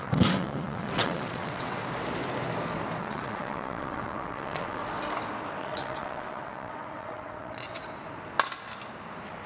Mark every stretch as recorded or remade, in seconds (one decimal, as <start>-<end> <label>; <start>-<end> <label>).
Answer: 0.0-1.8 remade; 1.8-3.0 recorded; 3.0-4.8 remade; 4.8-5.6 recorded; 5.6-7.8 remade; 7.8-9.5 recorded